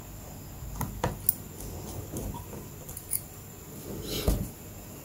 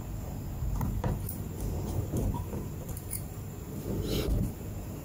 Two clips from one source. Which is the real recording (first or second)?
first